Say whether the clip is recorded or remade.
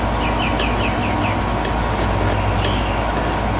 recorded